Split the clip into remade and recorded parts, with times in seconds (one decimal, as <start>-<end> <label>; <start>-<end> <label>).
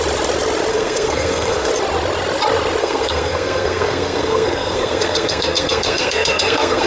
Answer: 0.0-0.7 recorded; 0.7-1.7 remade; 1.7-2.8 recorded; 2.8-6.9 remade